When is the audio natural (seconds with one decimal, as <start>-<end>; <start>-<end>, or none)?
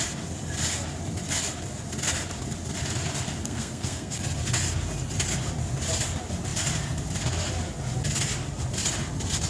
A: 0.0-3.4; 4.2-9.5